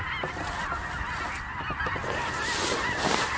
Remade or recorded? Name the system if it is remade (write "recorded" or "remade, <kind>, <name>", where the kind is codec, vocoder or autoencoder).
recorded